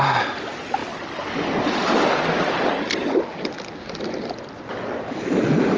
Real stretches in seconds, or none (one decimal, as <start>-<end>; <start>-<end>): 0.0-5.8